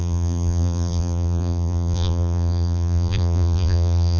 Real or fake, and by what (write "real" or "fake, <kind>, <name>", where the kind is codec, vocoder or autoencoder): fake, vocoder, BigVGAN v2